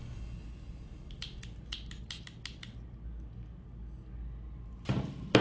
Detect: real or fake real